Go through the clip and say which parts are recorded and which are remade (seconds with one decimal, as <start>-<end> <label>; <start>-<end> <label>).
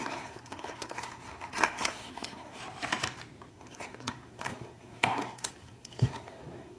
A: 0.0-2.6 remade; 2.6-3.5 recorded; 3.5-6.8 remade